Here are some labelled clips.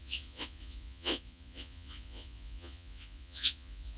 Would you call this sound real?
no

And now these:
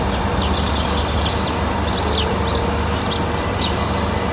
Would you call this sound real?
yes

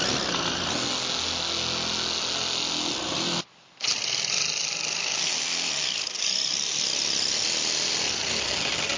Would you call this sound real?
yes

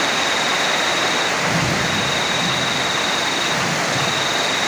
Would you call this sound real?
yes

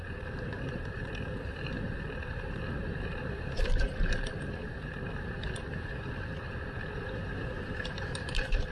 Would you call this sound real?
no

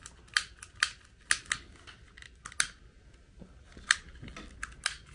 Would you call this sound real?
yes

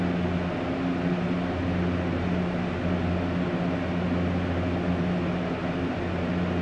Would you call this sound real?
yes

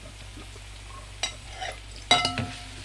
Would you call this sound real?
yes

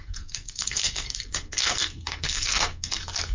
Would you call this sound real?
no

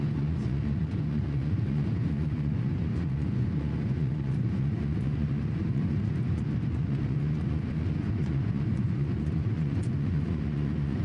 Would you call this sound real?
no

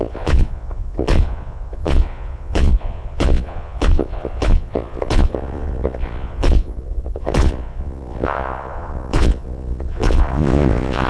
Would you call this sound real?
no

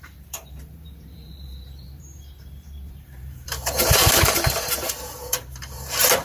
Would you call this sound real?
no